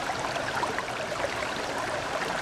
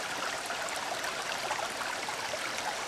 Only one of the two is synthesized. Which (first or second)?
first